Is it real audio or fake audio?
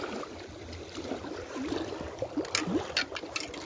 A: real